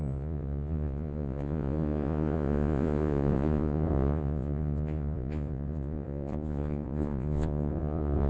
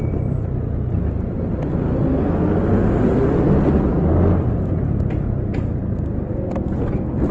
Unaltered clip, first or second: second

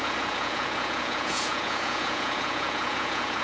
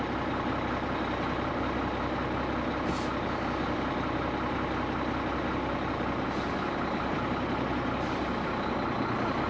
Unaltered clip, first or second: second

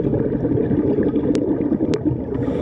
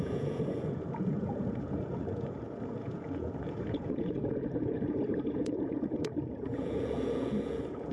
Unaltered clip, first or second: first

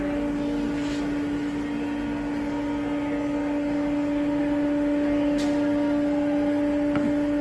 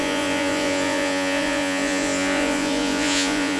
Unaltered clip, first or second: first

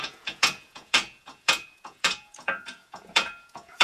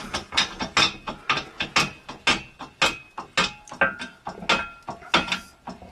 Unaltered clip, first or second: second